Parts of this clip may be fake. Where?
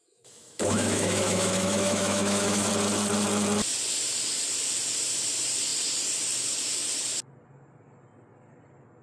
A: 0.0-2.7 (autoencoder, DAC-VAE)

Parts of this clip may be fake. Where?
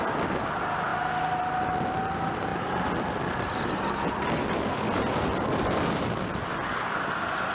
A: 0.9-1.7 (vocoder, BigVGAN v2); 2.5-6.5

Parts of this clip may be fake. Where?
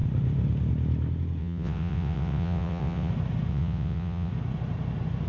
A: 1.4-3.1 (vocoder, WaveNeXt); 3.5-4.3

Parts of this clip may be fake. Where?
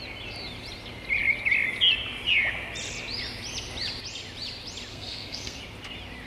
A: 4.9-5.6 (codec, SNAC)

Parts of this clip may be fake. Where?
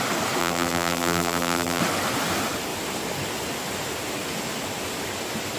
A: 0.4-1.8 (vocoder, BigVGAN v2)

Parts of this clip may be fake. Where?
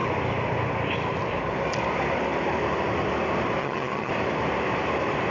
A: 3.6-4.1 (vocoder, HiFi-GAN)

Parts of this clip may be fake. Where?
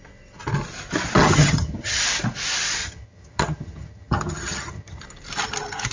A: 1.2-2.0 (vocoder, HiFi-GAN); 2.8-5.0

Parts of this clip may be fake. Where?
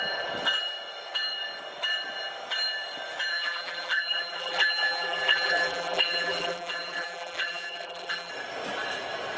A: 3.3-8.3 (vocoder, BigVGAN v2)